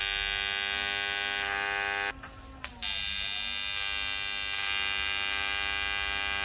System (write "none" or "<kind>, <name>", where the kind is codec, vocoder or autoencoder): none